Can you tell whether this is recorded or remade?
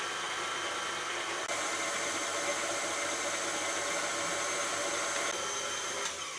recorded